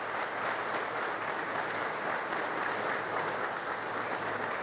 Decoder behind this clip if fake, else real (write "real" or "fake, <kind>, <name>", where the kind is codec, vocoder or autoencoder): real